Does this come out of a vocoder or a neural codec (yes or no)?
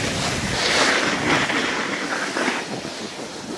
no